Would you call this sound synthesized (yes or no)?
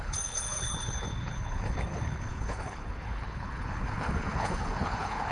yes